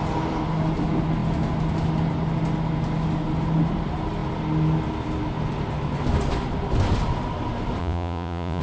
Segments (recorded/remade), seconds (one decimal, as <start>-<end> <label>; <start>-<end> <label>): 0.0-7.8 recorded; 7.8-8.6 remade